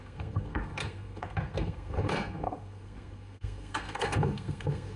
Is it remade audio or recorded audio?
remade